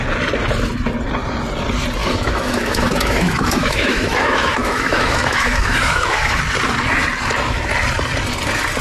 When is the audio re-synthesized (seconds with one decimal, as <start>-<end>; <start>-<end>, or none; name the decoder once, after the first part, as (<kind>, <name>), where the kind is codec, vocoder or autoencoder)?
2.0-6.4 (autoencoder, DAC-VAE)